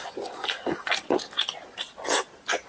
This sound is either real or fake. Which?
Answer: real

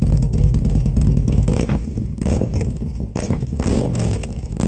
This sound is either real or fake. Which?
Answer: fake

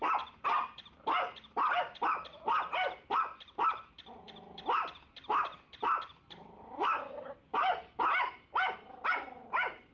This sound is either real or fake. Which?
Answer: real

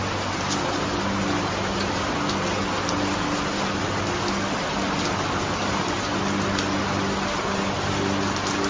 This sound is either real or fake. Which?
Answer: real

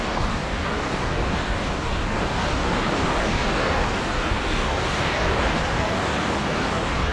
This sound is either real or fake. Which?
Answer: fake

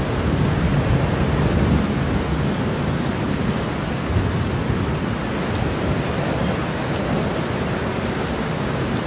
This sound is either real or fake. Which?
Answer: real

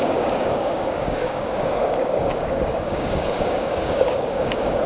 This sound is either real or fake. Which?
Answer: fake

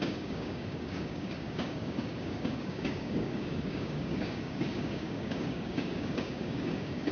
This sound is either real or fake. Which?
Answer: fake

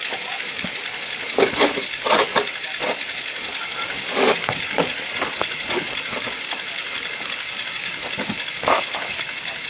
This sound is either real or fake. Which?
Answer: fake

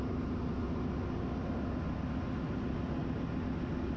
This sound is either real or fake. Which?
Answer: real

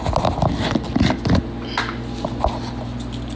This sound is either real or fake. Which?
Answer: real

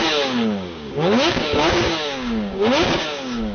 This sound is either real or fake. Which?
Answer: fake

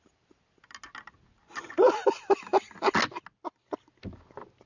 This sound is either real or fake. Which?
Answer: real